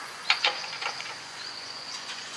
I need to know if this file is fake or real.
fake